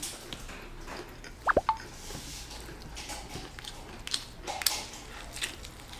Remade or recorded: recorded